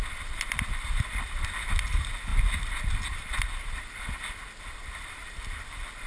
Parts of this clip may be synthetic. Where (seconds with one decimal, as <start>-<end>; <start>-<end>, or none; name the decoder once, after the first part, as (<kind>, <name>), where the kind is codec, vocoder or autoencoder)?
none